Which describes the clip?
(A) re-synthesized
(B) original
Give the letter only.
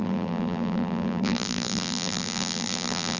A